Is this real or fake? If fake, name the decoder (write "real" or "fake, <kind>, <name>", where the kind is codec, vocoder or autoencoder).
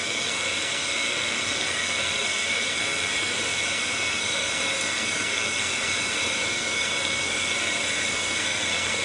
fake, codec, SNAC